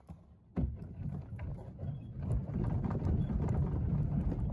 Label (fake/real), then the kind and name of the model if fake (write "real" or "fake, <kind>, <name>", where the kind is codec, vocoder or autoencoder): real